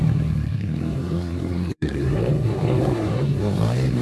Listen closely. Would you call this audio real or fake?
fake